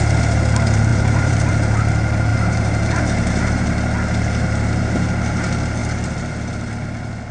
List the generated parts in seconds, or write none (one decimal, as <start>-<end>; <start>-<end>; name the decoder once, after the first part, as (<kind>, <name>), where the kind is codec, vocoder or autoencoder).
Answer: 0.9-1.5 (vocoder, BigVGAN v2); 2.3-3.0